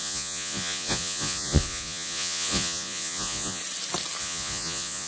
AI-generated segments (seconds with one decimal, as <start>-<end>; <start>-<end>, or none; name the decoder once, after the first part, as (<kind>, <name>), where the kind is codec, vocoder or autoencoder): 0.0-3.6 (vocoder, Vocos); 4.2-5.1